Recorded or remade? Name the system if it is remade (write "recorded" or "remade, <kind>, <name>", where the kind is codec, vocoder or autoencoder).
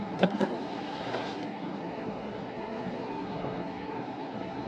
remade, codec, SNAC